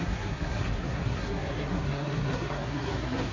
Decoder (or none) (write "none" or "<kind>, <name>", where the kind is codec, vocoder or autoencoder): codec, SNAC